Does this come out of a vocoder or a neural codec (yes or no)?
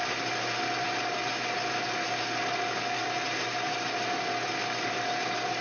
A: no